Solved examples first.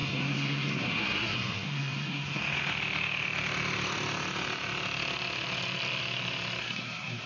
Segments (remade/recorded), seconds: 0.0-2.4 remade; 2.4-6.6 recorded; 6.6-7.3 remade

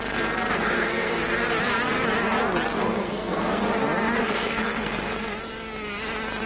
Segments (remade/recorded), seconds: 0.0-0.5 recorded; 0.5-1.2 remade; 1.2-2.8 recorded; 2.8-3.6 remade; 3.6-4.2 recorded; 4.2-5.1 remade; 5.1-6.5 recorded

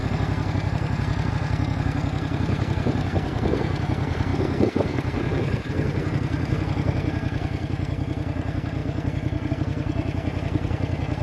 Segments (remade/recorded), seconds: 0.0-11.2 remade

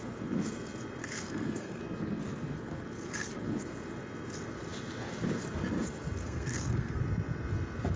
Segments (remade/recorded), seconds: 0.0-1.0 recorded; 1.0-1.8 remade; 1.8-6.2 recorded; 6.2-7.0 remade; 7.0-8.0 recorded

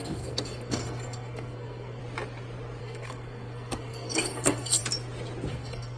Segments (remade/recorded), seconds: 0.0-2.0 remade; 2.0-2.8 recorded; 2.8-4.8 remade; 4.8-5.5 recorded; 5.5-6.0 remade

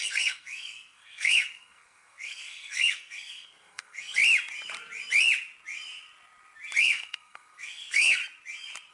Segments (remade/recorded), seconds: 0.0-4.2 remade; 4.2-6.8 recorded; 6.8-8.2 remade; 8.2-8.9 recorded